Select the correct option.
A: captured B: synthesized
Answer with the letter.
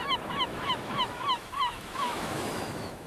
B